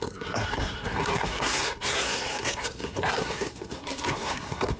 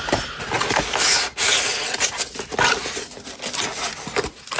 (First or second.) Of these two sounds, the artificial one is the first